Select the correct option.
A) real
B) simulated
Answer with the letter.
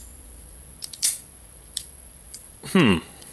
B